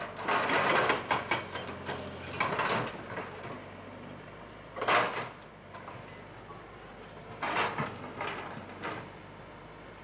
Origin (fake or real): real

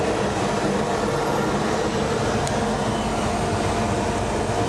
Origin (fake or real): real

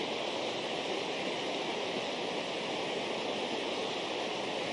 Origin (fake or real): real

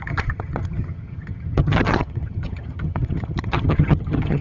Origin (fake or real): fake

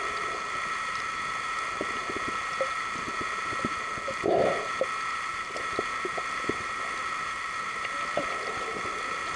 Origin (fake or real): real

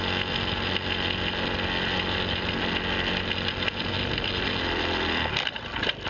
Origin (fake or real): real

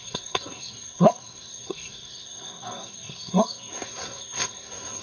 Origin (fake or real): fake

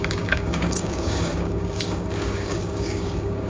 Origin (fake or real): fake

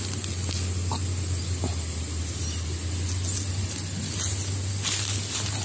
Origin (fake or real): real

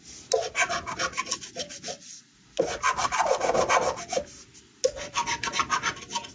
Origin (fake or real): real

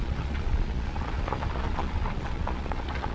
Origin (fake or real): fake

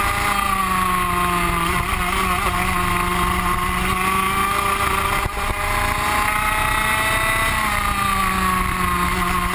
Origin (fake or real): real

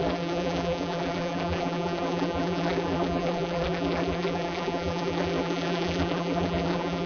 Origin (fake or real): fake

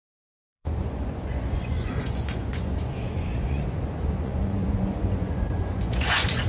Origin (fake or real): fake